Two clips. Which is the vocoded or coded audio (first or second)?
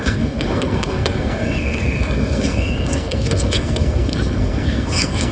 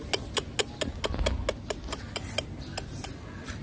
first